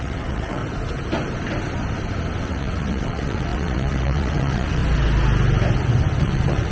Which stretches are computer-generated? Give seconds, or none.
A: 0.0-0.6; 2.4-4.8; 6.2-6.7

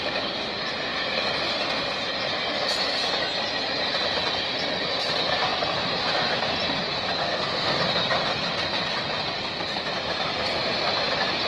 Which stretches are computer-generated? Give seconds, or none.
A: 7.2-7.8

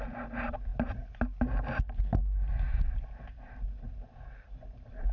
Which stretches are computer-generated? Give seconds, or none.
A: none